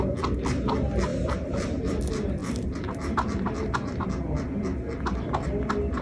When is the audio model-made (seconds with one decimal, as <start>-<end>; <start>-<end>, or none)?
1.1-2.0; 2.4-4.0

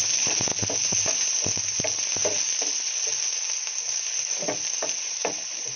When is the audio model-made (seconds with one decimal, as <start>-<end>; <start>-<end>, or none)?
0.0-0.5; 1.8-2.2; 4.3-5.8

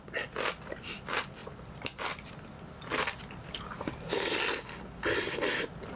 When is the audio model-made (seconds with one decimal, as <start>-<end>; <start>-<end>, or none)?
1.4-5.0

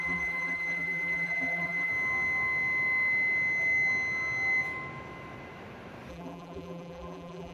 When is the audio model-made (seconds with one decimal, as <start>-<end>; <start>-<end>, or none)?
0.0-1.9; 6.1-7.5

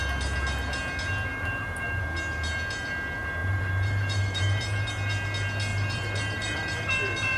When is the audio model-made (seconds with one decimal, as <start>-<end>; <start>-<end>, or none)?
1.3-2.0; 3.4-4.9; 5.7-6.9

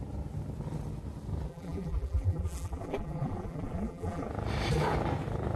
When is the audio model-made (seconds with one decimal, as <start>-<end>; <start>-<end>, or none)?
1.5-4.3

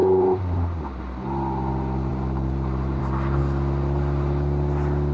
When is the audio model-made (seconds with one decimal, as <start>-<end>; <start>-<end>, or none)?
0.0-0.8; 2.1-3.0

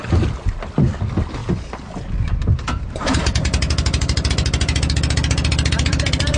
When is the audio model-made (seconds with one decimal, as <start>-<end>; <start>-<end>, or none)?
1.4-4.3; 5.5-6.4